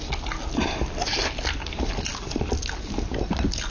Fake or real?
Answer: real